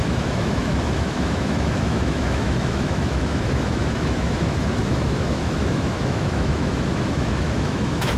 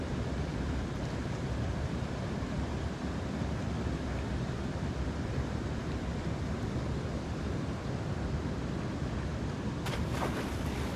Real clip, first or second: second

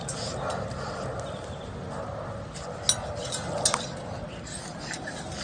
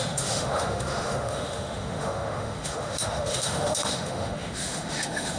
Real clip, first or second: first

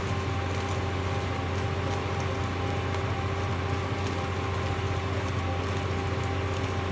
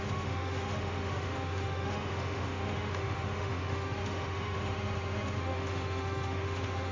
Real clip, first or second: first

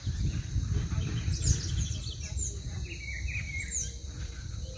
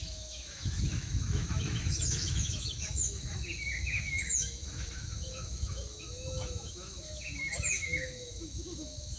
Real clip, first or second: first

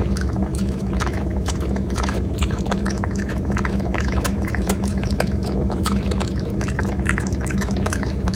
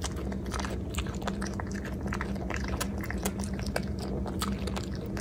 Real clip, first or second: second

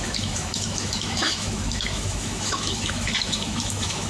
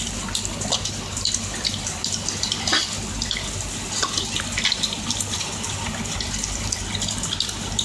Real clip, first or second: second